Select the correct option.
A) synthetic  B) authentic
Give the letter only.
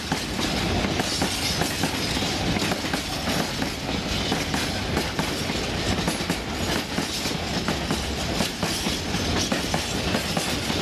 B